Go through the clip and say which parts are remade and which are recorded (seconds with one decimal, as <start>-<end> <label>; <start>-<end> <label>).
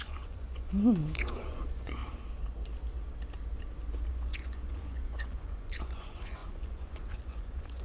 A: 0.0-2.0 remade; 2.0-4.1 recorded; 4.1-7.8 remade